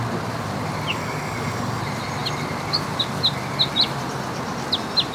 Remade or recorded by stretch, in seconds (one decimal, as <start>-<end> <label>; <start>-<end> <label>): 0.0-0.9 recorded; 0.9-1.8 remade; 1.8-5.1 recorded